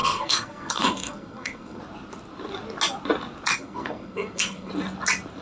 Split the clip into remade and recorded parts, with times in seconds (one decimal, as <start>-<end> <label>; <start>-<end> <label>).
0.0-1.8 remade; 1.8-3.5 recorded; 3.5-4.7 remade; 4.7-5.4 recorded